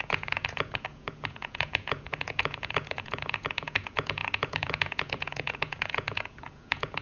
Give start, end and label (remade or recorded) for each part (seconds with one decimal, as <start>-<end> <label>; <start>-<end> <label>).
0.0-7.0 remade

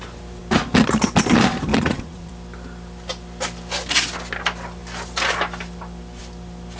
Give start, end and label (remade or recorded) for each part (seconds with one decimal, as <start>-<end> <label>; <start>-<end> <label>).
0.0-1.7 recorded; 1.7-2.3 remade; 2.3-6.8 recorded

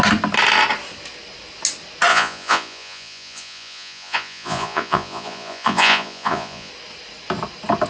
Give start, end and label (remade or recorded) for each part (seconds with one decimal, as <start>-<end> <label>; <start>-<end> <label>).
0.0-2.1 recorded; 2.1-6.7 remade; 6.7-7.9 recorded

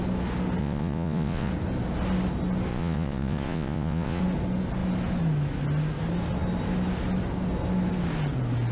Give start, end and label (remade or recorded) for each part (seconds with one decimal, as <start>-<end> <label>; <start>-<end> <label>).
0.0-0.6 recorded; 0.6-1.5 remade; 1.5-2.7 recorded; 2.7-4.2 remade; 4.2-8.7 recorded

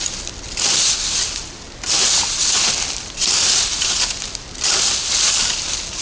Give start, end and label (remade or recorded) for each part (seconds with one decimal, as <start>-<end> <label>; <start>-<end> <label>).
0.0-6.0 recorded

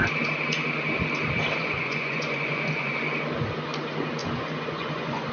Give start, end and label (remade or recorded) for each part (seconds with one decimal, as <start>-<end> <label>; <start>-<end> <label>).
0.0-1.6 recorded; 1.6-3.0 remade; 3.0-4.2 recorded; 4.2-5.3 remade

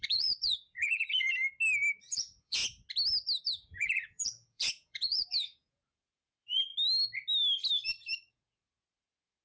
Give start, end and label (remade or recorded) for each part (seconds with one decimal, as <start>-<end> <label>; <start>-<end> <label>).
0.0-1.3 remade; 1.3-2.0 recorded; 2.0-2.6 remade; 2.6-3.4 recorded; 3.4-6.7 remade; 6.7-8.3 recorded; 8.3-9.4 remade